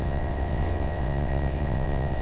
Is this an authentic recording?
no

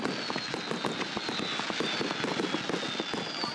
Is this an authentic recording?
yes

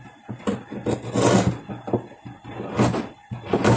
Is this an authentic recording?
yes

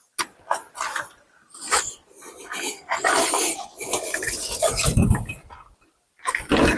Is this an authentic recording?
yes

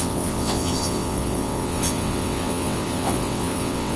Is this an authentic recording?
no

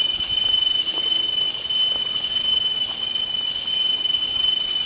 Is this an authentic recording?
yes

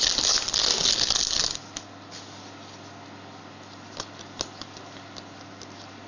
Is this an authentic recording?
yes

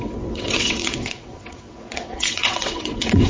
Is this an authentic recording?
no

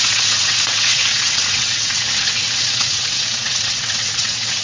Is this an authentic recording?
no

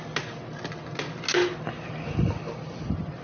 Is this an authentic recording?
yes